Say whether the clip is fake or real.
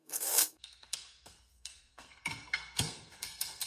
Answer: fake